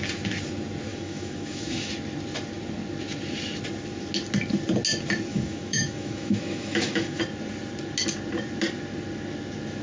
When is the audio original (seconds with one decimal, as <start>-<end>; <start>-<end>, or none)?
0.0-0.9; 1.9-5.3; 7.2-9.8